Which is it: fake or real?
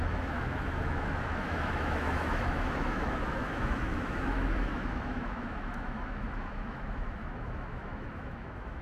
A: fake